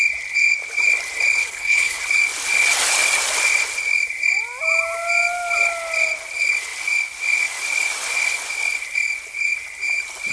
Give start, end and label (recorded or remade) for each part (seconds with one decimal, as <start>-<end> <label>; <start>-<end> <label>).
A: 0.0-1.4 recorded; 1.4-2.0 remade; 2.0-10.3 recorded